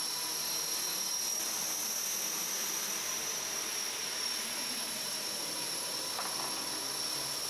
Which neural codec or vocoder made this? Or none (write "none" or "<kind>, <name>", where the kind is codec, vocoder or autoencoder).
none